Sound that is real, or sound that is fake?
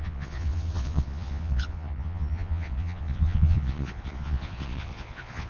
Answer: fake